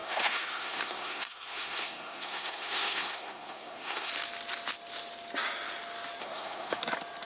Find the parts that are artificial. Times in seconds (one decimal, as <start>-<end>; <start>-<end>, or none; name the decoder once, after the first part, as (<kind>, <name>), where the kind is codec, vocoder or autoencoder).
0.0-4.1 (codec, SNAC); 6.2-6.8